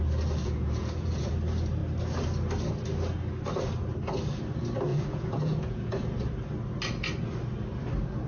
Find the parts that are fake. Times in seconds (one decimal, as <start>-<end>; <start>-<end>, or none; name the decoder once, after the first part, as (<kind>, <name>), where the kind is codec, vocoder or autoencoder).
0.4-1.3 (vocoder, Vocos); 4.9-5.9